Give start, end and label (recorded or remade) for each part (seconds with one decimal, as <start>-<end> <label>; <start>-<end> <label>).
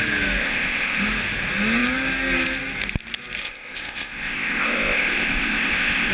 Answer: 0.0-0.4 recorded; 0.4-1.0 remade; 1.0-3.4 recorded; 3.4-6.1 remade